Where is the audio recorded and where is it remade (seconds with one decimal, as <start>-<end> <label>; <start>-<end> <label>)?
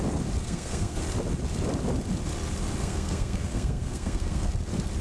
0.0-0.4 recorded; 0.4-1.0 remade; 1.0-2.8 recorded; 2.8-4.5 remade; 4.5-5.0 recorded